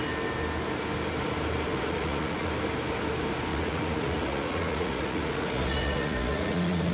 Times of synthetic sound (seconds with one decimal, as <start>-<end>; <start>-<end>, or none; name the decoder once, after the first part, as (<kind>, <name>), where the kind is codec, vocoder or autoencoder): 1.7-2.5 (vocoder, Vocos); 3.5-6.9